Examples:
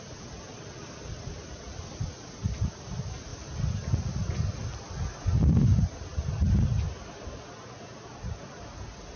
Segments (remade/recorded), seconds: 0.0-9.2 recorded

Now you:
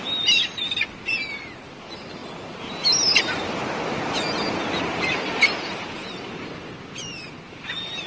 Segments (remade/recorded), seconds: 0.0-8.1 recorded

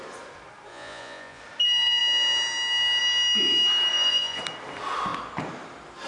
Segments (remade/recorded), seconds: 0.0-0.7 recorded; 0.7-1.4 remade; 1.4-3.9 recorded; 3.9-4.4 remade; 4.4-6.1 recorded

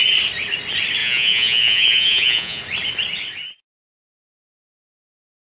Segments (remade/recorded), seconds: 0.0-1.0 recorded; 1.0-2.6 remade; 2.6-5.5 recorded

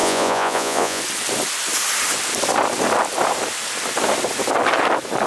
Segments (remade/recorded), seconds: 0.0-1.0 remade; 1.0-5.3 recorded

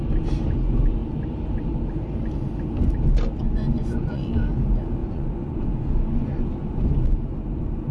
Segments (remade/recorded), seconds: 0.0-3.4 recorded; 3.4-4.2 remade; 4.2-5.0 recorded; 5.0-6.9 remade; 6.9-7.9 recorded

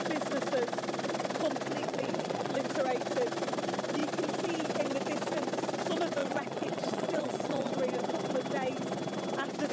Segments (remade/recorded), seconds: 0.0-1.8 recorded; 1.8-2.5 remade; 2.5-6.2 recorded; 6.2-7.7 remade; 7.7-9.7 recorded

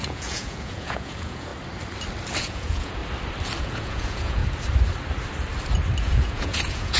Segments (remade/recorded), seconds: 0.0-1.5 remade; 1.5-2.4 recorded; 2.4-3.0 remade; 3.0-3.6 recorded; 3.6-4.4 remade; 4.4-6.0 recorded; 6.0-7.0 remade